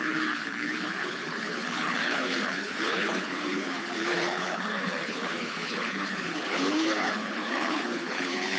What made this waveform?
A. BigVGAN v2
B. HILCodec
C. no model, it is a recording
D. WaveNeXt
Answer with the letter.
B